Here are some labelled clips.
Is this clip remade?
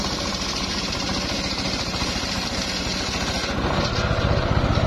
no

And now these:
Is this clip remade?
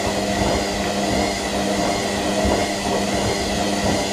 no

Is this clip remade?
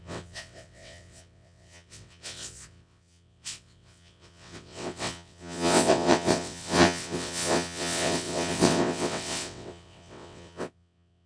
yes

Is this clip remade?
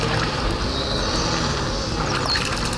no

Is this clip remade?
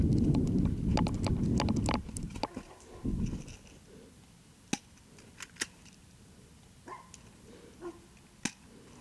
no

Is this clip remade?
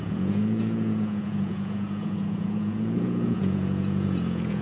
yes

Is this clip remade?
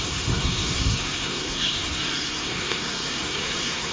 yes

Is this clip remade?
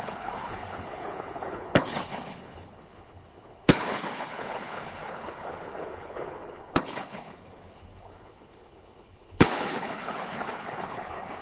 yes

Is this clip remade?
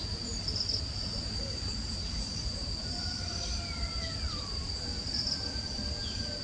no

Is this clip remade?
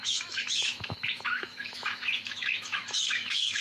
yes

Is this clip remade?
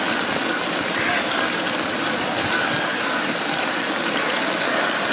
no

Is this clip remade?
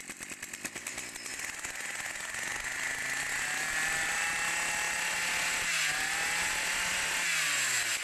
no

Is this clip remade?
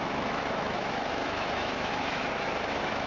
yes